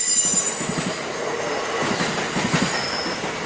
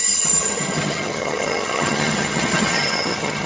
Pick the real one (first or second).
first